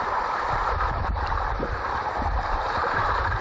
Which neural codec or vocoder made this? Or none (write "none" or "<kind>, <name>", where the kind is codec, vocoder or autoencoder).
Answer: vocoder, BigVGAN v2